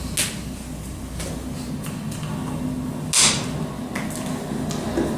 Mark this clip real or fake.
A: real